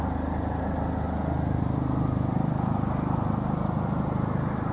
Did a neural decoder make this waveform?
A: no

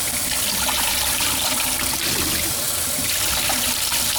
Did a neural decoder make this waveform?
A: yes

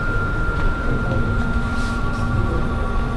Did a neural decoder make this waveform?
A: yes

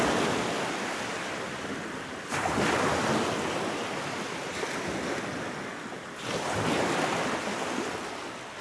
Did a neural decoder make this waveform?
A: no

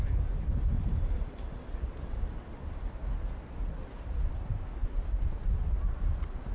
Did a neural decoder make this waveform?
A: no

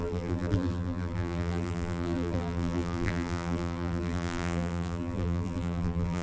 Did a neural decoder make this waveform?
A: yes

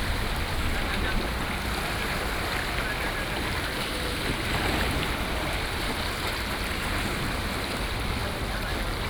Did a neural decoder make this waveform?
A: no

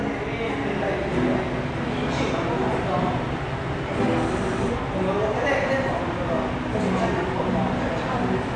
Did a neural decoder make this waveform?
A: no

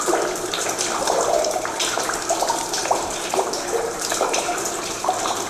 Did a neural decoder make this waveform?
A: no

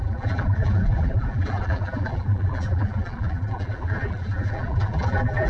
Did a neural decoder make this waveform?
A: yes